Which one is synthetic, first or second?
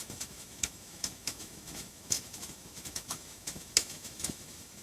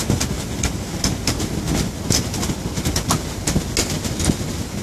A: first